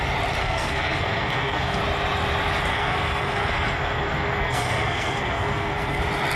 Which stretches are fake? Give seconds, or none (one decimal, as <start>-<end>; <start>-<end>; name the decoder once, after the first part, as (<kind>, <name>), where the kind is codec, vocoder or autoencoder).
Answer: 0.4-1.8 (codec, SNAC); 2.7-6.0